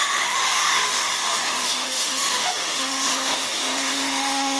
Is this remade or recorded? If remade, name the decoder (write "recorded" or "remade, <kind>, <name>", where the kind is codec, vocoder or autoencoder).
remade, autoencoder, DAC-VAE